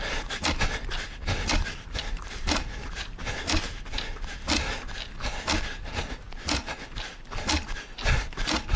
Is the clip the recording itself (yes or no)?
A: yes